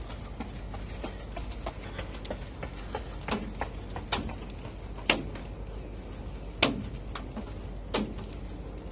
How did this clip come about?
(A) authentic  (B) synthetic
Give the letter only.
A